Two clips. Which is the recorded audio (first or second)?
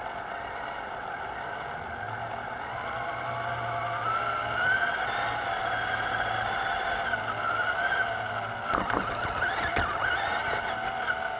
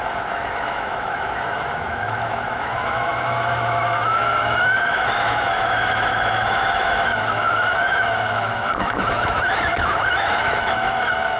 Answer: first